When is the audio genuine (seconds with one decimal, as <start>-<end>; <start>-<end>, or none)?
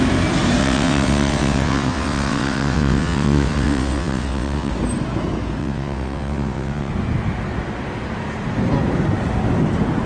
0.0-0.6; 4.7-5.6; 6.9-10.1